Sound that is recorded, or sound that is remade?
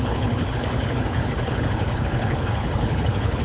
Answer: remade